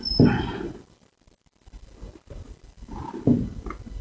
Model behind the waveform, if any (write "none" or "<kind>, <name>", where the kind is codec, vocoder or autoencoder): none